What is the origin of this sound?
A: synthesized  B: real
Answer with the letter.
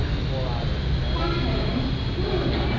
B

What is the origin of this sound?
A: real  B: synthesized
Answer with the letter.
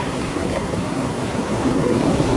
B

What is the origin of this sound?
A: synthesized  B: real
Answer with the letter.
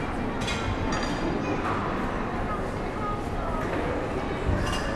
B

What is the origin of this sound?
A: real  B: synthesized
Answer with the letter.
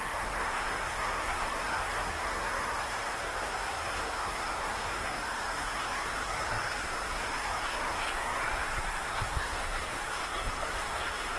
B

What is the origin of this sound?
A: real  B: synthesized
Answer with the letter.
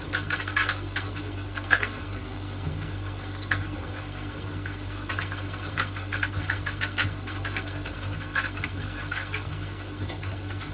B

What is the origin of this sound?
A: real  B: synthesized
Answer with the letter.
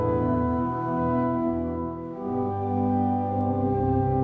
B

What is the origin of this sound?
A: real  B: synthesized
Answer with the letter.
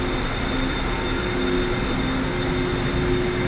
A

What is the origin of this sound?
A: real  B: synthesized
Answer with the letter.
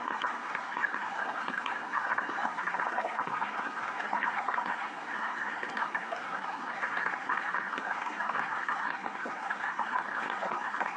B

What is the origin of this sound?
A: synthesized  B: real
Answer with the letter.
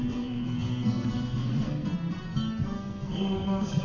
A